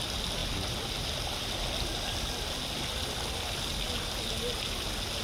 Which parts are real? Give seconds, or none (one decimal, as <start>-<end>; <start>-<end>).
0.0-5.2